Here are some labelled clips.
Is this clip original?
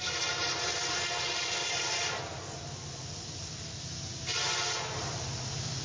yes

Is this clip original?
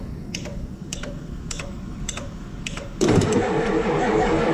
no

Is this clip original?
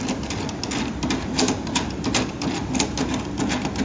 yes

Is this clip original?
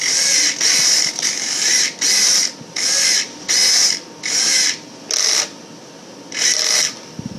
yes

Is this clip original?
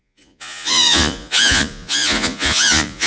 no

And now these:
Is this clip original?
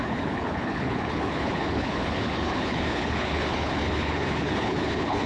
no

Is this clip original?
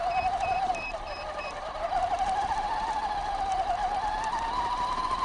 no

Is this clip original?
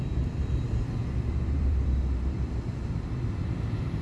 no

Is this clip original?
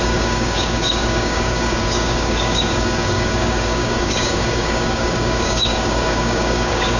no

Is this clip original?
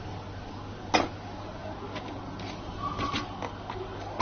yes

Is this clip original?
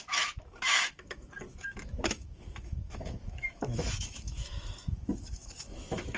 no